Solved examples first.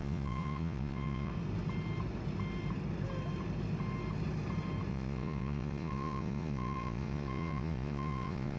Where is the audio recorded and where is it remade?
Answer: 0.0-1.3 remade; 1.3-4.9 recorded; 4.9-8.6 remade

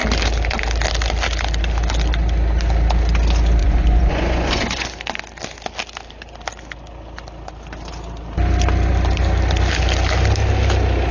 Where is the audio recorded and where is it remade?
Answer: 0.0-3.6 recorded; 3.6-4.9 remade; 4.9-11.1 recorded